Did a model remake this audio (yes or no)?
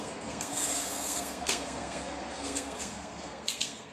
yes